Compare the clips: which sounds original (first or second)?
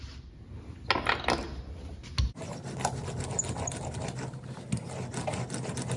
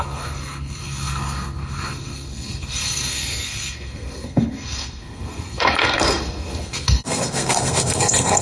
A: first